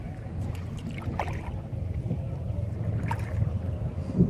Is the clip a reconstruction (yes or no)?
no